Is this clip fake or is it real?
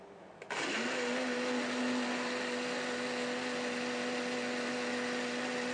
real